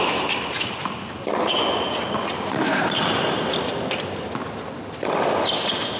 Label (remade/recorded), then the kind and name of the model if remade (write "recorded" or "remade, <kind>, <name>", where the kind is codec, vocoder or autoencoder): recorded